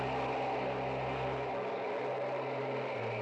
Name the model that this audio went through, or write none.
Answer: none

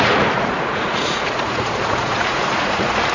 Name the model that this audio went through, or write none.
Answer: vocoder, Vocos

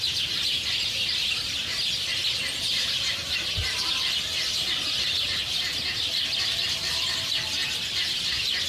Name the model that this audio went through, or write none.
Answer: none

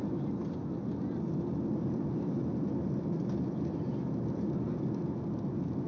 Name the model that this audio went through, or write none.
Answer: none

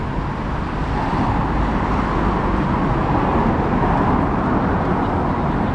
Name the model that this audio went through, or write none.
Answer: none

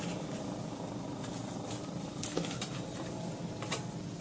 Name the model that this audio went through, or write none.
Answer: none